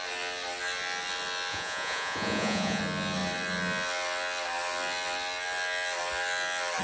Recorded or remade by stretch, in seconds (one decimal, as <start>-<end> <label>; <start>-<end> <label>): 0.0-1.5 recorded; 1.5-2.8 remade; 2.8-6.8 recorded